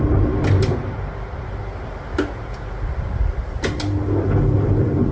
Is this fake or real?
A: real